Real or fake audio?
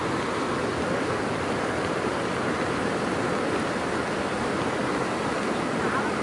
real